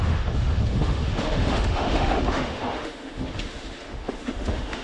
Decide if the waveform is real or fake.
fake